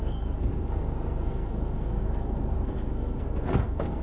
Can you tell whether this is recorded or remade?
remade